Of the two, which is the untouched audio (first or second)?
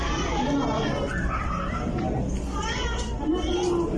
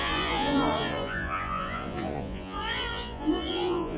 first